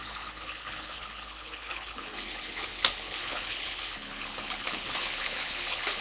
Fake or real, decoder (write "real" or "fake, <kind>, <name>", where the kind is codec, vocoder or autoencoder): fake, codec, HILCodec